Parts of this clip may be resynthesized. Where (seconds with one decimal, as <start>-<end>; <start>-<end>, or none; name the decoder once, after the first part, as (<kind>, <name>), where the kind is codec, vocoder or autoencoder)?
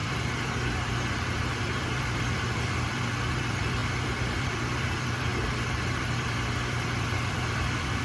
0.0-8.0 (vocoder, BigVGAN v2)